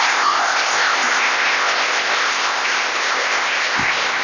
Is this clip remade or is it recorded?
remade